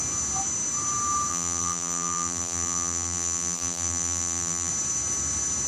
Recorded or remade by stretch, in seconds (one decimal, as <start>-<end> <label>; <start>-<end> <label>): 0.0-1.3 recorded; 1.3-4.7 remade; 4.7-5.7 recorded